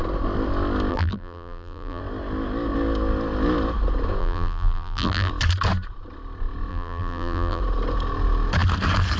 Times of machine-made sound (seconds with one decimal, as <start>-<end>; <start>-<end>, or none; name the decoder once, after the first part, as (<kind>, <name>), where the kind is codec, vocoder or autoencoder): 0.9-2.0 (vocoder, BigVGAN v2); 4.2-5.3; 6.7-7.6